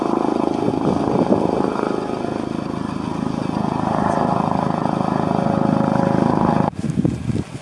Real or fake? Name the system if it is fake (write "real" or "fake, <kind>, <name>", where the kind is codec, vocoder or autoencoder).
real